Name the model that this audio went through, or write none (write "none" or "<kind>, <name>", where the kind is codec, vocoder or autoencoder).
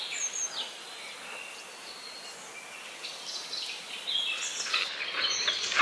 none